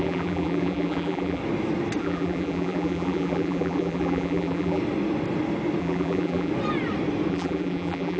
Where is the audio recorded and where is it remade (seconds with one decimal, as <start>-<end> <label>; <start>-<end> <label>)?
0.0-1.4 remade; 1.4-2.0 recorded; 2.0-4.8 remade; 4.8-5.8 recorded; 5.8-6.5 remade; 6.5-7.3 recorded; 7.3-8.2 remade